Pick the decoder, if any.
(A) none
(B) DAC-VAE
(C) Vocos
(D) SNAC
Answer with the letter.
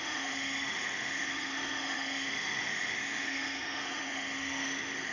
B